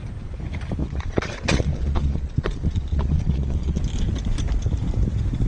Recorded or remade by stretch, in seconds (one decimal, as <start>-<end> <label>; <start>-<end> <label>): 0.0-0.8 recorded; 0.8-3.8 remade; 3.8-5.5 recorded